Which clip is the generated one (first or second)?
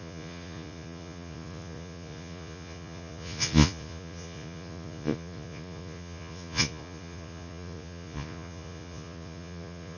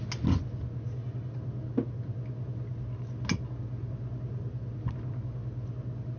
first